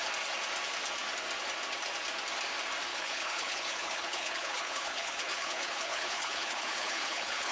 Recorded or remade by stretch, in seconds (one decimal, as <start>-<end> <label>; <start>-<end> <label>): 0.0-2.9 recorded; 2.9-7.5 remade